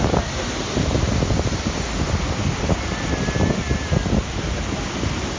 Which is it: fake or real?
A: real